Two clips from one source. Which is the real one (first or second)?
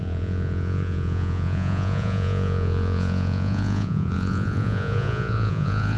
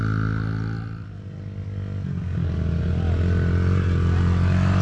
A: second